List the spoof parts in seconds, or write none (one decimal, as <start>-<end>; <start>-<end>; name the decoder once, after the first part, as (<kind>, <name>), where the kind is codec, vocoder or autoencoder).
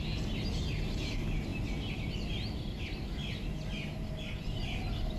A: none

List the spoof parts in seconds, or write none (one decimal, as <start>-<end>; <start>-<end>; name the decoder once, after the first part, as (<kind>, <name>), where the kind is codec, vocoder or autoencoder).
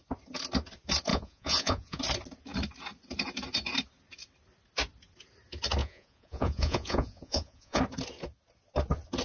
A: 1.1-2.0 (vocoder, Vocos); 5.8-7.8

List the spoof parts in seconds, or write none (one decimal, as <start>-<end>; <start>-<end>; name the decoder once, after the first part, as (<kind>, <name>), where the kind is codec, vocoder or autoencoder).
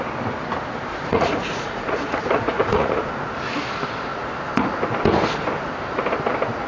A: 0.9-3.1 (vocoder, Vocos)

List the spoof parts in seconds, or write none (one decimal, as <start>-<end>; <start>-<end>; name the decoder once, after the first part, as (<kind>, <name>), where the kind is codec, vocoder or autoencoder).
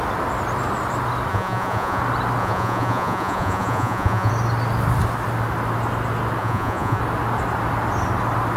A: 1.3-2.0 (vocoder, Vocos); 2.4-4.3; 6.4-7.0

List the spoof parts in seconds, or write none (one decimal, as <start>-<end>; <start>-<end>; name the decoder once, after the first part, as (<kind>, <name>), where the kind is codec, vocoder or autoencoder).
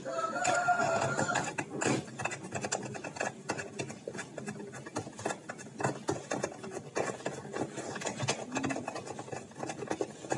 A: none